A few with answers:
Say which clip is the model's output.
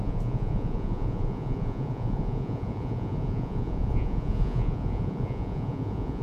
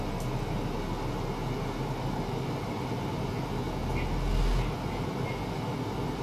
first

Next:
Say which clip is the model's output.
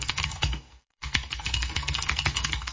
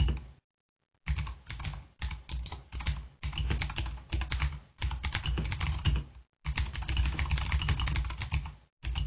first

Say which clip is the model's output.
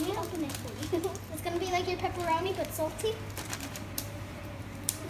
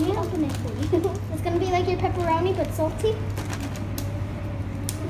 first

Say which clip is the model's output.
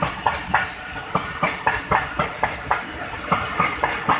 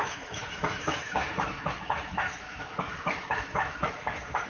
second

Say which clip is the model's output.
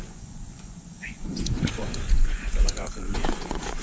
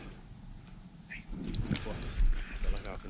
first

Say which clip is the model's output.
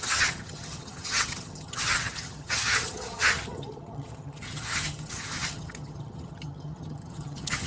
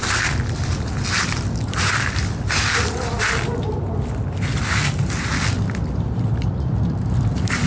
first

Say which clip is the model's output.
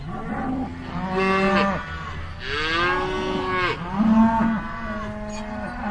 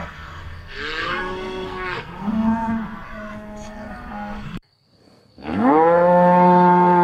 second